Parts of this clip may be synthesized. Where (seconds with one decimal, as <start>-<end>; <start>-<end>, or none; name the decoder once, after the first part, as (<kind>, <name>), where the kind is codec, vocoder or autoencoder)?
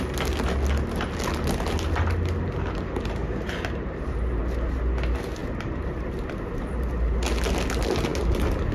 3.2-4.4 (vocoder, BigVGAN v2); 5.4-6.6